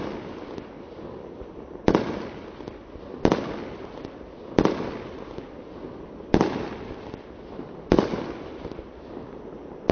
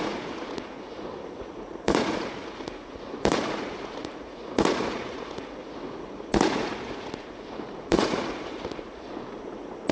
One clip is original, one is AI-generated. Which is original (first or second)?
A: first